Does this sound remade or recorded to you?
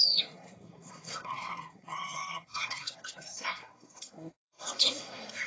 remade